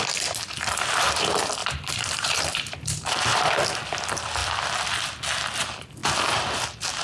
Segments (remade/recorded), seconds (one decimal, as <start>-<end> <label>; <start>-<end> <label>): 0.0-1.6 recorded; 1.6-3.5 remade; 3.5-7.0 recorded